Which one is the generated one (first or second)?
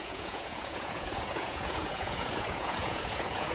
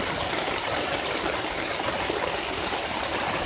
first